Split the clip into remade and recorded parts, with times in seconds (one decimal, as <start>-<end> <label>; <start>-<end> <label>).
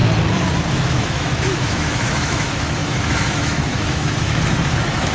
0.0-0.7 recorded; 0.7-5.1 remade